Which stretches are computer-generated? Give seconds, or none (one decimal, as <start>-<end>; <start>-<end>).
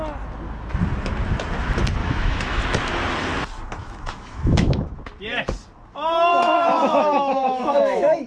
2.0-2.6; 3.8-4.9; 6.3-8.3